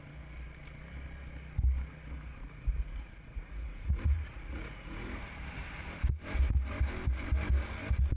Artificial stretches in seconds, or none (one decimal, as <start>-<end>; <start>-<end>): 2.4-5.2